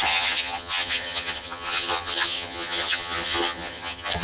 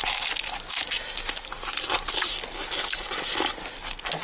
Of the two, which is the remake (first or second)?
first